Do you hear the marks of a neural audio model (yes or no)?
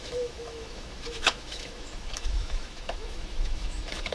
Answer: yes